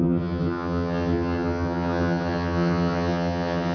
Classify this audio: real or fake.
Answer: fake